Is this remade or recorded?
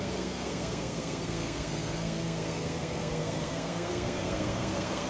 remade